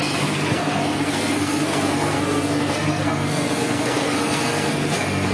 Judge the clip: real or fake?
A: fake